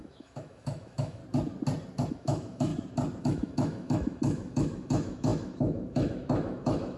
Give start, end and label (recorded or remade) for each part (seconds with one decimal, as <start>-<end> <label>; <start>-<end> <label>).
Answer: 0.0-1.2 remade; 1.2-2.1 recorded; 2.1-2.7 remade; 2.7-3.2 recorded; 3.2-7.0 remade

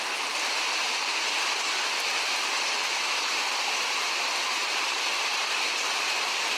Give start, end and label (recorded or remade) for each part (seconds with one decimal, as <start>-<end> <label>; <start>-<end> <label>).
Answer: 0.0-1.0 recorded; 1.0-3.8 remade; 3.8-6.6 recorded

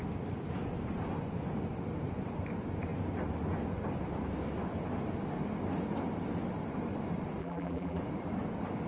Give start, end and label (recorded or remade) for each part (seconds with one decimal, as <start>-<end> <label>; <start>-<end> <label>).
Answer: 0.0-7.4 recorded; 7.4-8.0 remade; 8.0-8.9 recorded

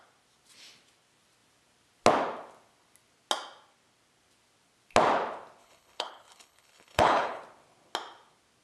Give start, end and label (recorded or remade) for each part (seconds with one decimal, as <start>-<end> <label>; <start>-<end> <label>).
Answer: 0.0-5.6 recorded; 5.6-7.4 remade; 7.4-8.6 recorded

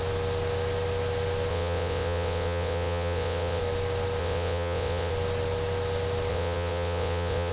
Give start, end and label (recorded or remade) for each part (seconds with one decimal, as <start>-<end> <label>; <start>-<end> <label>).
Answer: 0.0-1.5 recorded; 1.5-3.6 remade; 3.6-4.2 recorded; 4.2-5.1 remade; 5.1-6.3 recorded; 6.3-7.5 remade

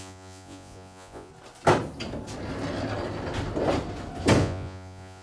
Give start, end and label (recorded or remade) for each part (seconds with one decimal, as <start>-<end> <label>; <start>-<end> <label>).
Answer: 0.0-1.3 remade; 1.3-4.4 recorded; 4.4-5.2 remade

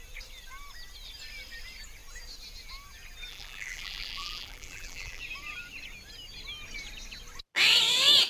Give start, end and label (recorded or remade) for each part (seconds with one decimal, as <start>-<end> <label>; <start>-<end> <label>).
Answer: 0.0-3.3 recorded; 3.3-5.2 remade; 5.2-8.3 recorded

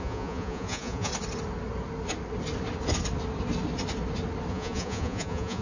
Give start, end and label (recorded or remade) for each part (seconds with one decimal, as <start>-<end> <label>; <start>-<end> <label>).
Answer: 0.0-1.1 remade; 1.1-4.5 recorded; 4.5-5.6 remade